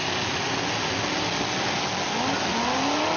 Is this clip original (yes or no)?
yes